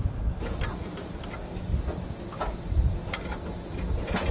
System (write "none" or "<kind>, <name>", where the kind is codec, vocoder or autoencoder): none